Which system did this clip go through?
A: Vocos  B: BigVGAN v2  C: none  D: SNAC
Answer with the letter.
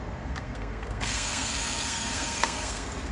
D